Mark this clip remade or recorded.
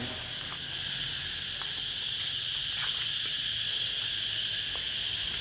recorded